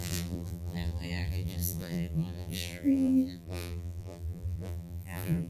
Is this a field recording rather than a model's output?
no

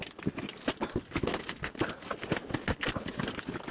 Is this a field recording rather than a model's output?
yes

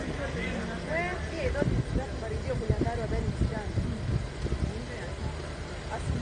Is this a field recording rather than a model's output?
yes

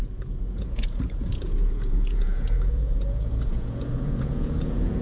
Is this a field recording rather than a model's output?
no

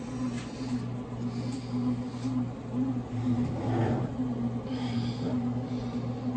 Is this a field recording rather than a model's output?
yes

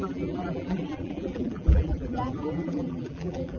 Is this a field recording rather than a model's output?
no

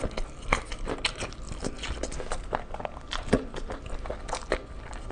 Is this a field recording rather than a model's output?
yes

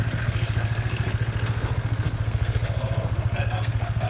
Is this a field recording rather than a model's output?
no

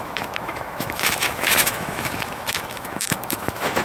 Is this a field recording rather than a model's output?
no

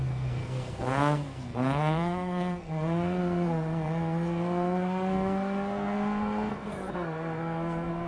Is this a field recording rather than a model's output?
no